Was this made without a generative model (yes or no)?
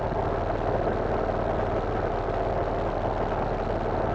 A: yes